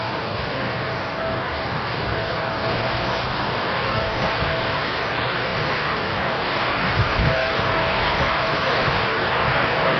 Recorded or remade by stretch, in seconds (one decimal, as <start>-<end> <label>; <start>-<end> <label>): 0.0-10.0 remade